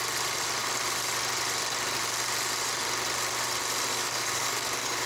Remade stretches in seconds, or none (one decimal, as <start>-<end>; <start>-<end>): 3.9-5.1